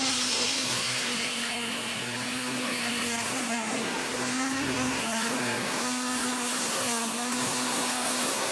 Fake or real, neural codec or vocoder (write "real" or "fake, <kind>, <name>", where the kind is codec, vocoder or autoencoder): fake, codec, SNAC